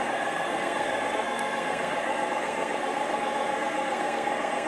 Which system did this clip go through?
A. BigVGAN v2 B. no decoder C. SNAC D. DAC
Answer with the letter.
C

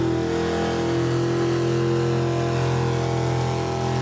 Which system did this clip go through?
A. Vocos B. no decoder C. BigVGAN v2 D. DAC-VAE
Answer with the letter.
B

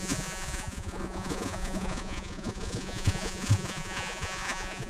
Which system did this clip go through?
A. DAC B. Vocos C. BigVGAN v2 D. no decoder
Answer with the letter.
B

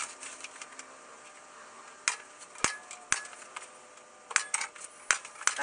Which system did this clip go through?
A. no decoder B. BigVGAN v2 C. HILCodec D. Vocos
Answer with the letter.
A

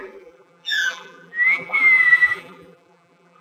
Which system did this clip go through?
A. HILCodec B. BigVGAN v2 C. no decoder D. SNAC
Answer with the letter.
B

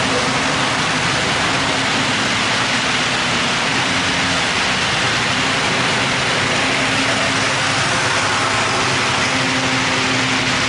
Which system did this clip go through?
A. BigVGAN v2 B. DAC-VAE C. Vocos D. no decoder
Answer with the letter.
D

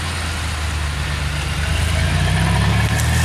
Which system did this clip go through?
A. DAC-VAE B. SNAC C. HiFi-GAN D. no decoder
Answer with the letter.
D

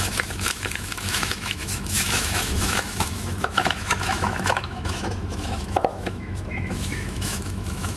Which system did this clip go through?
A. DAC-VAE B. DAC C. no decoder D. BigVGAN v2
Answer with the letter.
A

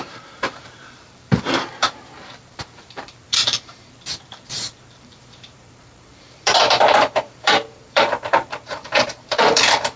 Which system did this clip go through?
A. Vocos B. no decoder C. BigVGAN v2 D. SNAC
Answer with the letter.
C